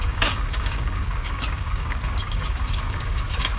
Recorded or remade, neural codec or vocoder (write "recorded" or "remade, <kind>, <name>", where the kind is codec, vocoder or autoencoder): remade, codec, DAC